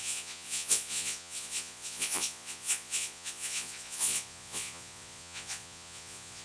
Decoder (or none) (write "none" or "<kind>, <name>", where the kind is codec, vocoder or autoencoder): vocoder, Vocos